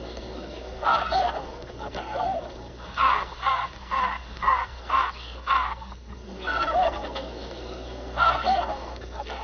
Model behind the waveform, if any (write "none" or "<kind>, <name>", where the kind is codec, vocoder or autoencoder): codec, SNAC